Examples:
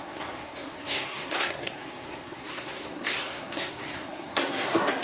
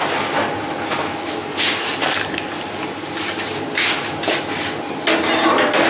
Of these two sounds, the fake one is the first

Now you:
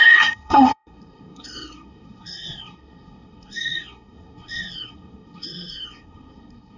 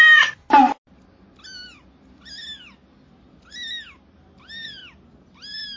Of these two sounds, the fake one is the first